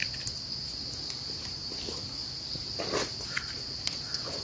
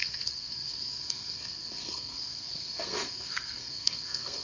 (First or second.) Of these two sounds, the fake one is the second